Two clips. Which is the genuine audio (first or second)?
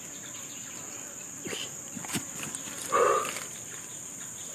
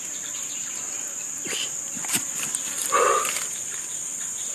second